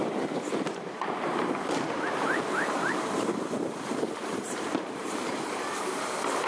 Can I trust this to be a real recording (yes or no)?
no